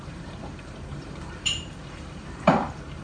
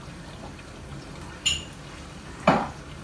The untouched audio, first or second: second